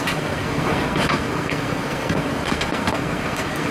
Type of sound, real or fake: fake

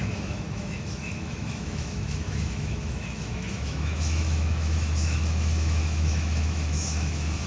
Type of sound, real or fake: fake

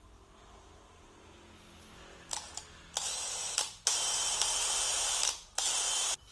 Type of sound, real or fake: real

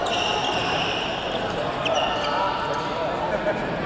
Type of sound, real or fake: real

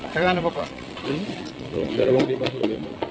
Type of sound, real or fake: fake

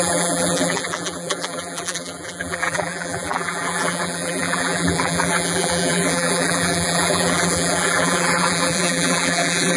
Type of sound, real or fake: fake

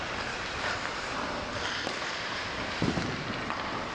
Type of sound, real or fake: fake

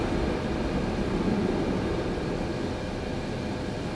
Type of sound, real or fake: real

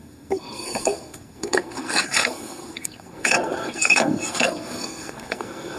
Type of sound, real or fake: fake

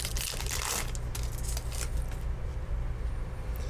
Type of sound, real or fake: real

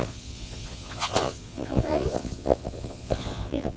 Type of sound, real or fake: fake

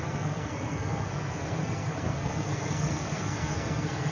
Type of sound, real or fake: fake